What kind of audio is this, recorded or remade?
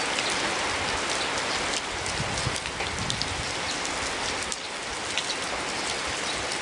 recorded